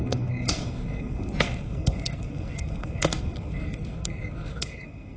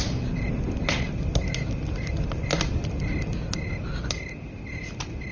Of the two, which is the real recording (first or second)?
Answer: second